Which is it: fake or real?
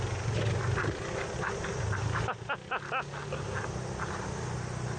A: real